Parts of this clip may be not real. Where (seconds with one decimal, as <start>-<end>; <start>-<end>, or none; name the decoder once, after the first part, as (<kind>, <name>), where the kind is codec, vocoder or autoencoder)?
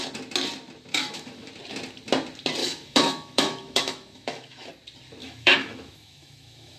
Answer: 0.9-1.5 (autoencoder, DAC-VAE); 2.6-4.7; 5.2-6.8